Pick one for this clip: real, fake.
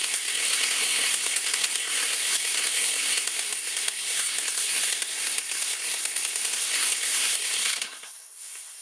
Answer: fake